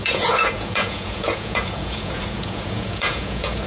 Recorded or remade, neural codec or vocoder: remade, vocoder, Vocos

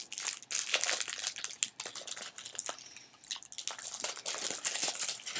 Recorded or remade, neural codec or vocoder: recorded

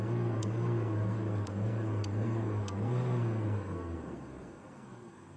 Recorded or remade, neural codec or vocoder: remade, codec, SNAC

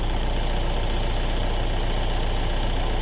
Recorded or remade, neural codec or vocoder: recorded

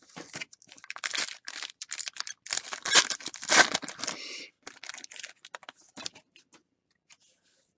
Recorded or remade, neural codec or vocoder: recorded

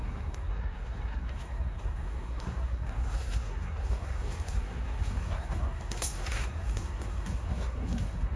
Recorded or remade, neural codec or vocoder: remade, codec, SNAC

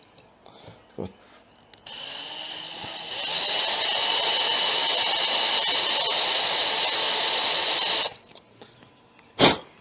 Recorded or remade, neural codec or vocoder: recorded